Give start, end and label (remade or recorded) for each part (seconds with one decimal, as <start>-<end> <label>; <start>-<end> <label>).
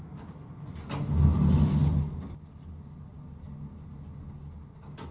0.0-5.1 recorded